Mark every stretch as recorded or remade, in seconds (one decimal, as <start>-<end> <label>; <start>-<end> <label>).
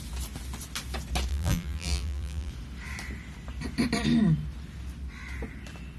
0.0-1.3 recorded; 1.3-2.5 remade; 2.5-6.0 recorded